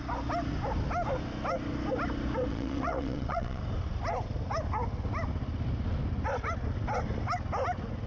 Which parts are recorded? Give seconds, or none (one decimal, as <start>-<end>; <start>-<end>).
0.0-2.5; 3.6-8.1